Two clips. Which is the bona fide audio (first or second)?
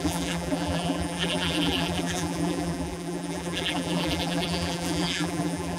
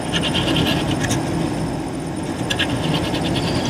second